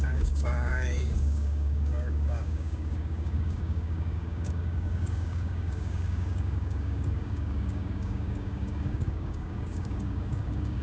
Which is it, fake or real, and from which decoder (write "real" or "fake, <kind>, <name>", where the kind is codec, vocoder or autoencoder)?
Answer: fake, codec, DAC